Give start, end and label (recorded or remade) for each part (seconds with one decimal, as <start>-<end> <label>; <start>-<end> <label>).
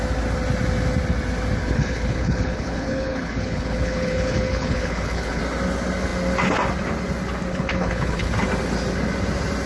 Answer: 0.0-1.6 recorded; 1.6-5.4 remade; 5.4-7.5 recorded; 7.5-8.3 remade; 8.3-9.7 recorded